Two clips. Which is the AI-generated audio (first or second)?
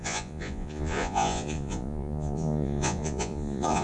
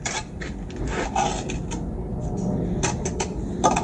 first